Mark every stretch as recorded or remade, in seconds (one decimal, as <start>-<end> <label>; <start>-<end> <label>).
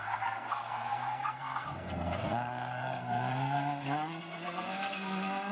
0.0-5.5 remade